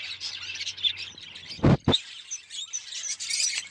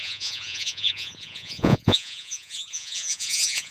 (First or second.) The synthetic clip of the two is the second